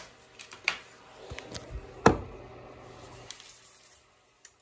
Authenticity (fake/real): real